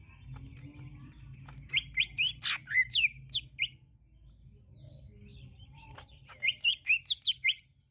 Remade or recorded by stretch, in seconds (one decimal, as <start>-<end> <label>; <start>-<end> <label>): 0.0-5.3 recorded; 5.3-6.7 remade; 6.7-7.9 recorded